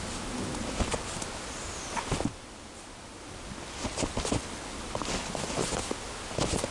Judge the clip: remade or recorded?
recorded